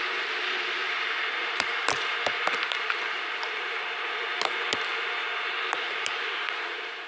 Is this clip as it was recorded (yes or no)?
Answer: no